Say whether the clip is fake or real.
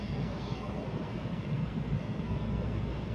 fake